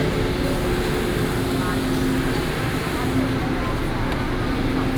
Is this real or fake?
real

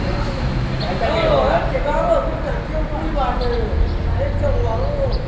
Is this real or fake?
real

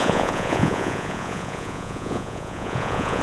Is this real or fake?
fake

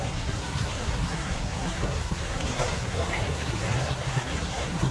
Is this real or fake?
fake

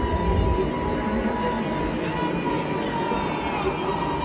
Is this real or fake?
real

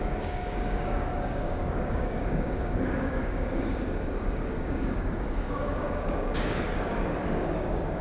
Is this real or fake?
fake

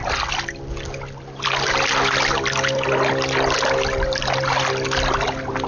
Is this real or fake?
real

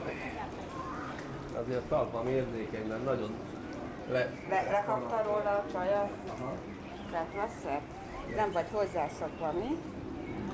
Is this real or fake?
real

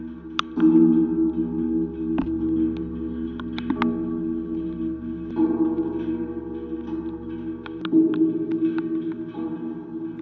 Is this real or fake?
real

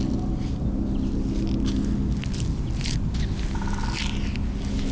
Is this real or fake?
real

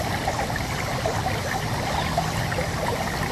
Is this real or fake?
real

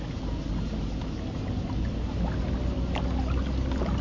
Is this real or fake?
real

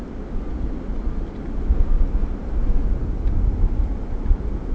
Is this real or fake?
real